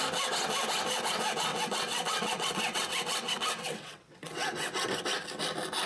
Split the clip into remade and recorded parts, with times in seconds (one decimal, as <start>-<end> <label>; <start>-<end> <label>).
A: 0.0-1.5 recorded; 1.5-5.0 remade; 5.0-5.9 recorded